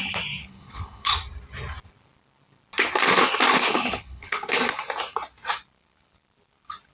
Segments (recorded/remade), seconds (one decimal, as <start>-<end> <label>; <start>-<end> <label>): 0.0-0.4 recorded; 0.4-1.1 remade; 1.1-3.7 recorded; 3.7-4.6 remade; 4.6-6.9 recorded